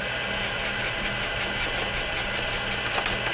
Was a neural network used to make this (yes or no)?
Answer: no